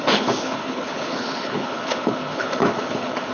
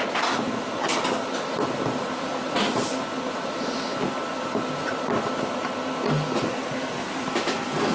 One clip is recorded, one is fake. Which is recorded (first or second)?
second